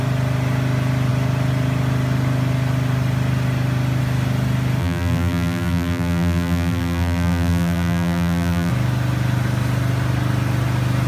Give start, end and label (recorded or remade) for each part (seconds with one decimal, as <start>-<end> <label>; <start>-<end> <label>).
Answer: 0.0-4.8 recorded; 4.8-8.7 remade; 8.7-11.1 recorded